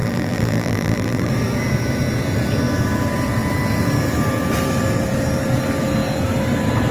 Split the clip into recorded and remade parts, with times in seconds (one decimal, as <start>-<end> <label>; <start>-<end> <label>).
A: 0.0-1.3 remade; 1.3-6.9 recorded